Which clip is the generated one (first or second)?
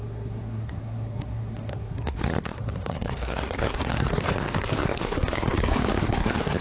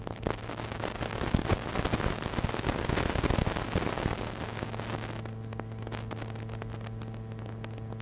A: first